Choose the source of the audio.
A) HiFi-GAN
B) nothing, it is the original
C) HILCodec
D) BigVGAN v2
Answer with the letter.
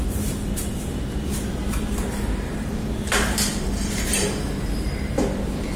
D